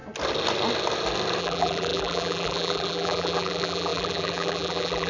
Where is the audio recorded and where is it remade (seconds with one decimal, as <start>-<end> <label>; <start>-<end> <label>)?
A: 0.0-1.4 recorded; 1.4-5.1 remade